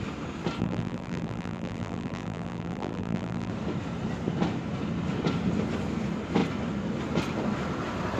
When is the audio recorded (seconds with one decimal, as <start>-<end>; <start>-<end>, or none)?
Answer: 0.0-0.6; 3.5-8.2